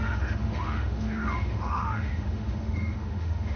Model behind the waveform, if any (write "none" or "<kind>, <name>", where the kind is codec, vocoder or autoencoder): autoencoder, DAC-VAE